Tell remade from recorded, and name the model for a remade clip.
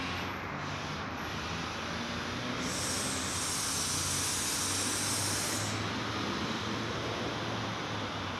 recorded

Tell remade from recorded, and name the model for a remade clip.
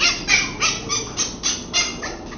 recorded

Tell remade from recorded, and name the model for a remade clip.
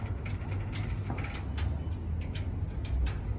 recorded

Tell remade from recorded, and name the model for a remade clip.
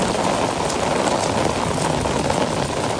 recorded